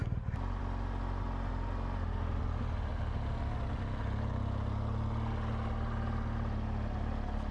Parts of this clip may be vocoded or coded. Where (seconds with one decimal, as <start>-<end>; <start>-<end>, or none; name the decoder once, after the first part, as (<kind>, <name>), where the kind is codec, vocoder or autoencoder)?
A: 0.0-0.6 (vocoder, BigVGAN v2)